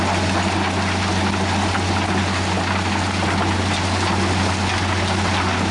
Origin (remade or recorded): recorded